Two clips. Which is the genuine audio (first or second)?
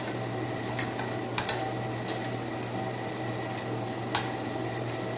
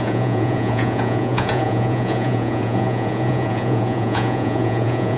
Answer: first